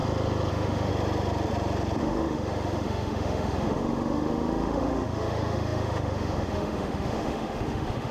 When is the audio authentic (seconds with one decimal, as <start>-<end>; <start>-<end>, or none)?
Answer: 0.0-0.5; 0.9-2.0